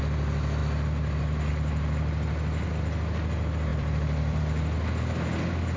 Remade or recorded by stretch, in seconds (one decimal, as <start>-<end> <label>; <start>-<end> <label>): 0.0-3.7 recorded; 3.7-4.4 remade; 4.4-5.8 recorded